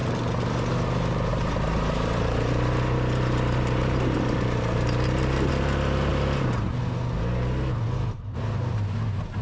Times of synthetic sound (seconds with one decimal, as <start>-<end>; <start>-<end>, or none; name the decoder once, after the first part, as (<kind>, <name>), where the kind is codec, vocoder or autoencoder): 1.3-5.5 (vocoder, BigVGAN v2); 6.1-6.8